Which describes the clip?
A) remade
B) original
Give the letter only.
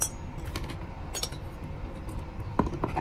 B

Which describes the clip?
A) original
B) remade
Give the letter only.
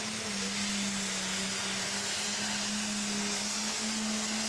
A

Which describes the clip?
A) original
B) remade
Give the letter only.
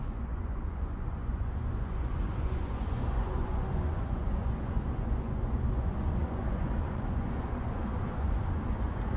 B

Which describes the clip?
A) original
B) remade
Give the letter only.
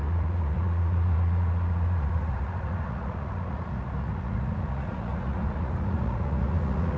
B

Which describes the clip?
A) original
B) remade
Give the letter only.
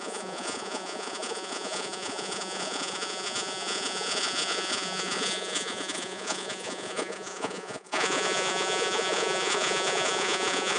B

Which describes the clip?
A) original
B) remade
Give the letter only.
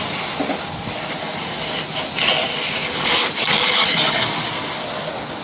A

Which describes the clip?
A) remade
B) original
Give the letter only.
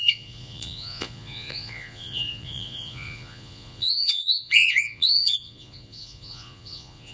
A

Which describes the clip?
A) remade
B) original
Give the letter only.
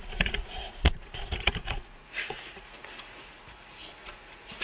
A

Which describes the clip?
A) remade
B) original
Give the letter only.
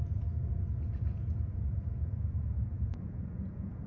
A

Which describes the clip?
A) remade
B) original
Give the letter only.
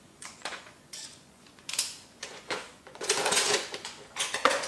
A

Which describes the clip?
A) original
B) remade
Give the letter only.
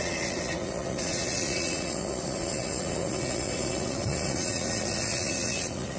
B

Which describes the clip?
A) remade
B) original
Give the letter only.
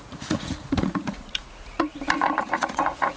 A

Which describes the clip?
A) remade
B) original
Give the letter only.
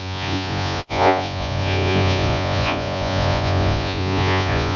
A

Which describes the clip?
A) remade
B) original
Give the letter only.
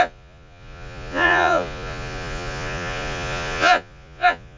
A